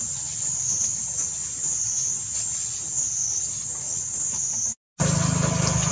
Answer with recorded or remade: recorded